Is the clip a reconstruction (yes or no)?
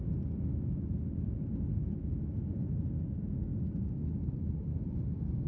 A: no